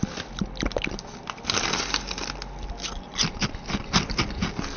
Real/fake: real